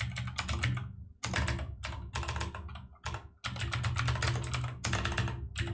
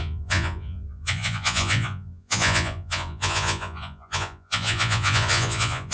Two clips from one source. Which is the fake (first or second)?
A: second